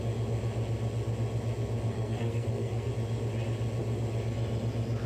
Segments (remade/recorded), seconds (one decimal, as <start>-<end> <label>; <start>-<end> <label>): 0.0-1.9 recorded; 1.9-2.9 remade; 2.9-5.1 recorded